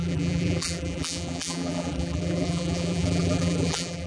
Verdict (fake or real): fake